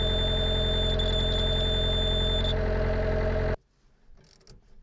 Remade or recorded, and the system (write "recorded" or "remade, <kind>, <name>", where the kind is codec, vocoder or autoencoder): recorded